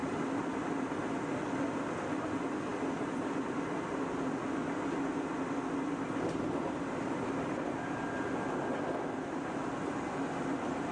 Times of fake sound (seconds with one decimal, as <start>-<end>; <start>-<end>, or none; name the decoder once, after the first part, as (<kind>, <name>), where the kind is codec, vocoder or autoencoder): 0.0-1.4 (vocoder, BigVGAN v2); 2.7-3.9